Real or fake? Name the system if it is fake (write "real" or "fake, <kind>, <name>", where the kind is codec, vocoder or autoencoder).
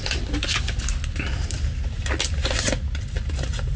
real